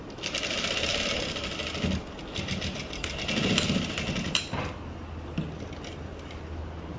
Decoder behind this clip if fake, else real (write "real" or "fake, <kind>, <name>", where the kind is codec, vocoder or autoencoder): real